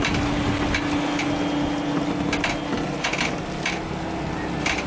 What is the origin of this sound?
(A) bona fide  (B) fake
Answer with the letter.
A